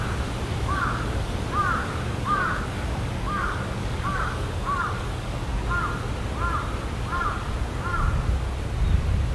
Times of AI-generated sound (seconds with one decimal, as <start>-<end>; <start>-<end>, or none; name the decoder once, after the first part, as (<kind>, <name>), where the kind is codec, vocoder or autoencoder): 0.5-1.4 (codec, DAC); 1.8-5.7